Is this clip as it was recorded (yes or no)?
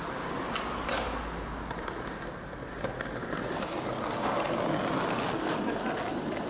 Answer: yes